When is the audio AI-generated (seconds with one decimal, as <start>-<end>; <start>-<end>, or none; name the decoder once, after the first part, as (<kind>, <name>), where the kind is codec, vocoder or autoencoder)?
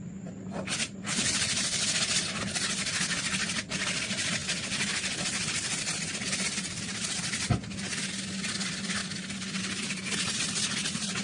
none